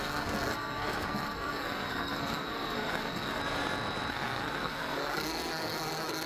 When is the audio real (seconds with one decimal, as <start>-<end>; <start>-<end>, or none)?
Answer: 3.4-4.1